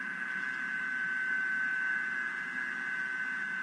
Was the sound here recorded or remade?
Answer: recorded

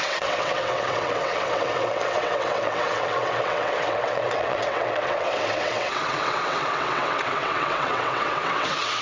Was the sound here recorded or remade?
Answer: remade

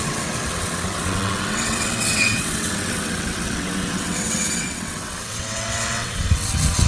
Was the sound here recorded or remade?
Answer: remade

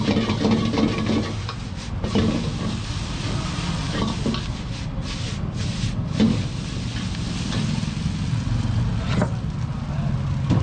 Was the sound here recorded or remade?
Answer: recorded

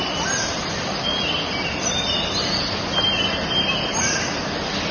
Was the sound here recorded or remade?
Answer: recorded